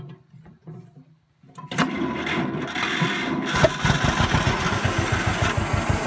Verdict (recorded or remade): recorded